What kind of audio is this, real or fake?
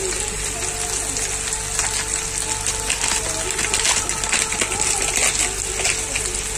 real